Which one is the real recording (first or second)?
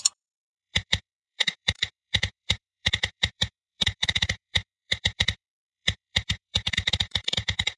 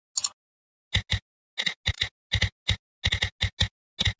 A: second